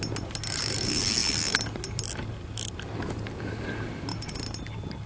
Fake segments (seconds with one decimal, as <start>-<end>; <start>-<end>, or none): none